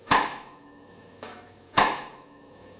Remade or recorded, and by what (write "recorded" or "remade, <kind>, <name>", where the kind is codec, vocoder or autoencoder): remade, autoencoder, DAC-VAE